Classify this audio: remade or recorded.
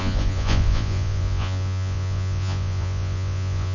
remade